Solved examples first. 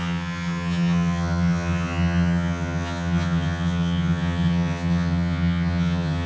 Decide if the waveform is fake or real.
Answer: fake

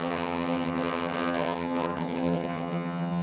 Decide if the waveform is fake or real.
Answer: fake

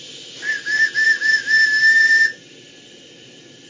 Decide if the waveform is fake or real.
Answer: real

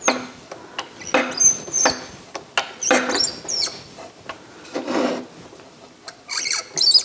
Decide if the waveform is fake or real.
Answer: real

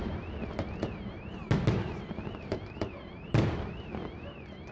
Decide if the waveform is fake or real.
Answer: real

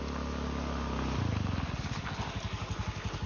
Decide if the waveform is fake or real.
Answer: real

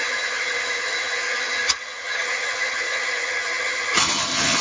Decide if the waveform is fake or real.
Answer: fake